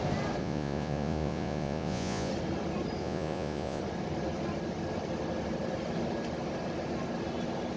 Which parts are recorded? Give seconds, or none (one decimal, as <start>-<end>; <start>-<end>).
0.0-0.4; 2.3-3.0; 3.8-7.8

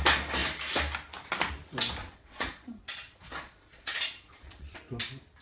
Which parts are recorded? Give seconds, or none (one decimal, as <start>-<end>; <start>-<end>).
0.0-2.0; 4.8-5.4

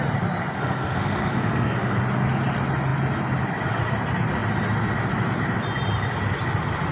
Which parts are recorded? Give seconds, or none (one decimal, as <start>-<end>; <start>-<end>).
0.0-0.5; 2.0-6.9

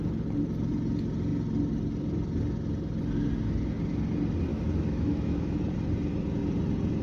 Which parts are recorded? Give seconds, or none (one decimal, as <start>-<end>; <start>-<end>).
0.0-4.5; 5.6-7.0